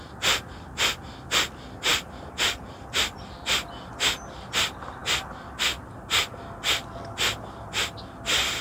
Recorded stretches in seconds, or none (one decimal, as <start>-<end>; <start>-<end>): 0.0-8.6